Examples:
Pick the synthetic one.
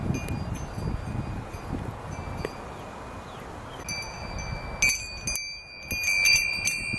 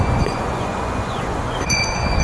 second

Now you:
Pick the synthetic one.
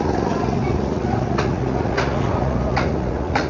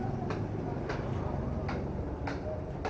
first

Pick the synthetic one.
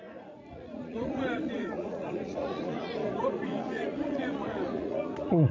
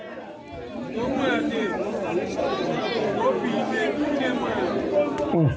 first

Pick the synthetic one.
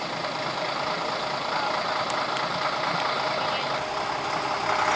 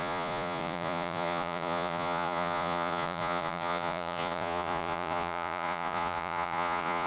second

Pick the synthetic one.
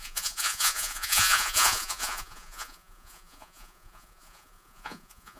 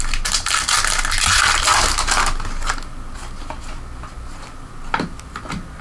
first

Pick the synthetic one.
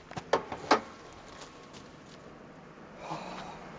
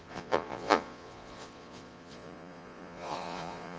second